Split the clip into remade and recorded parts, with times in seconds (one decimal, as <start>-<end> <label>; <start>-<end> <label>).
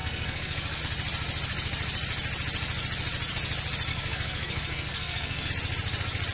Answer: 0.0-0.8 remade; 0.8-3.9 recorded; 3.9-5.5 remade; 5.5-6.3 recorded